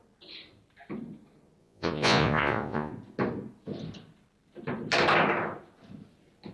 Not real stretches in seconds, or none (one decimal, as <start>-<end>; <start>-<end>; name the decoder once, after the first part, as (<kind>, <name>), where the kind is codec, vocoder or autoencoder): 1.6-2.9 (vocoder, Vocos)